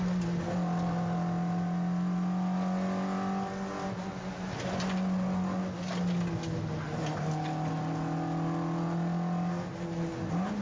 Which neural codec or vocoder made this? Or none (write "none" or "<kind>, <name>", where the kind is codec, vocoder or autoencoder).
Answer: none